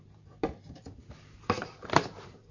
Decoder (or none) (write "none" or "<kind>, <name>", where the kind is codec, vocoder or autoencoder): vocoder, BigVGAN v2